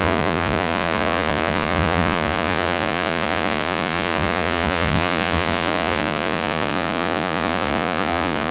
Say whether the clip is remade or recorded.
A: remade